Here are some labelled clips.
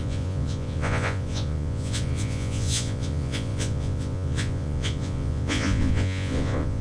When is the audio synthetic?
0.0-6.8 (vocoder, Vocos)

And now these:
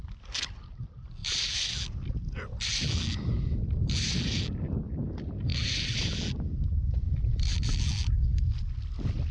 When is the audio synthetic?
none

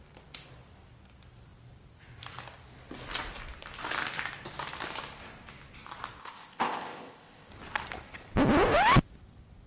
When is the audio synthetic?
6.2-7.5 (codec, ZipCodec)

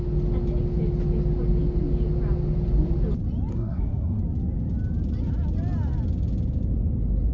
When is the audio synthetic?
3.5-4.2 (codec, SNAC)

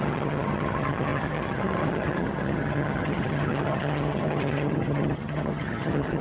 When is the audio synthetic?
0.0-6.2 (vocoder, HiFi-GAN)

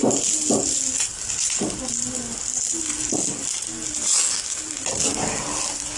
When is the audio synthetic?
none